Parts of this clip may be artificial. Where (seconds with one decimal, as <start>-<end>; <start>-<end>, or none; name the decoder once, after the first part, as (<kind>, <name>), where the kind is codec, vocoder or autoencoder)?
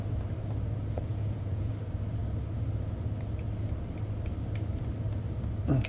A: 1.1-1.7 (vocoder, Vocos)